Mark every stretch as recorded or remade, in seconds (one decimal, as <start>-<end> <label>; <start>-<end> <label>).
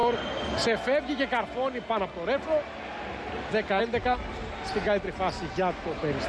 0.0-6.3 recorded